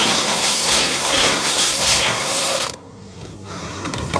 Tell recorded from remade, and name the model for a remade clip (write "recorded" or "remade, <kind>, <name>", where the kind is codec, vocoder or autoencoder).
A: remade, codec, SNAC